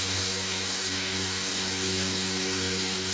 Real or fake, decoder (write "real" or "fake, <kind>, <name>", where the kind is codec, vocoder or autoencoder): fake, codec, DAC